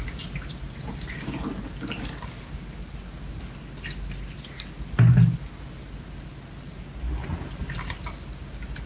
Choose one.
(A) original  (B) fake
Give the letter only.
A